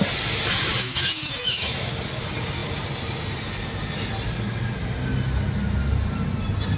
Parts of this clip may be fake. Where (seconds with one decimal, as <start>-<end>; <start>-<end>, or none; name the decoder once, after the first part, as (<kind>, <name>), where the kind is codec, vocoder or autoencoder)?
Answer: 0.8-1.9 (autoencoder, DAC-VAE)